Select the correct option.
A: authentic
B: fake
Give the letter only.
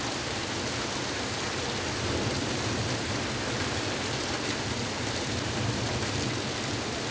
A